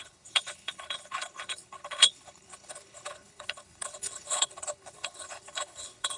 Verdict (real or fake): fake